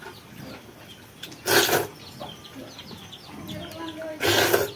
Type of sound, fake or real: real